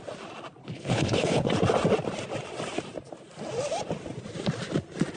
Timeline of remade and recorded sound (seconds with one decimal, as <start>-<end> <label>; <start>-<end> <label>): 0.0-0.6 recorded; 0.6-1.5 remade; 1.5-5.2 recorded